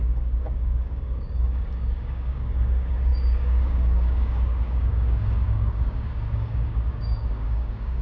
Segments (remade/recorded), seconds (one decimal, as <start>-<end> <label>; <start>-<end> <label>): 0.0-8.0 remade